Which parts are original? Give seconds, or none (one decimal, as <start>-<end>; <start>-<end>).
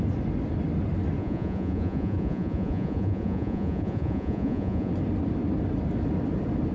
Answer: 0.0-1.2; 4.9-6.7